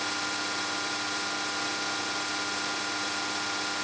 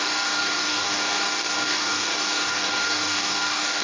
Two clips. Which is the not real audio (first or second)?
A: second